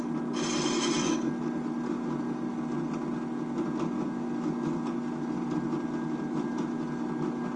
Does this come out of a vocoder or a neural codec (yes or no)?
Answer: no